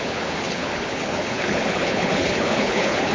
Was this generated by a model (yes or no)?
yes